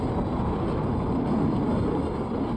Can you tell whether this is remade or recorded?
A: recorded